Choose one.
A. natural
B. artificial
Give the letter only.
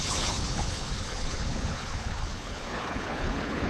B